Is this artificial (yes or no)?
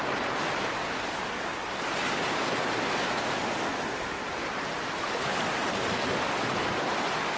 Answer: no